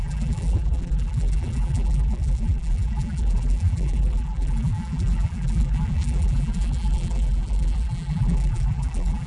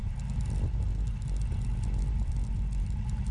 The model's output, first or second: first